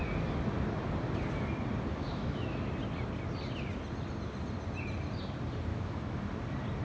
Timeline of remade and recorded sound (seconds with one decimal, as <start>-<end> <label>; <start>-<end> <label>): 0.0-1.9 recorded; 1.9-2.7 remade; 2.7-5.7 recorded; 5.7-6.2 remade; 6.2-6.8 recorded